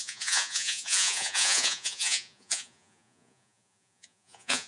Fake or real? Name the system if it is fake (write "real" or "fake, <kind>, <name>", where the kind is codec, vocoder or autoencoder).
fake, vocoder, Vocos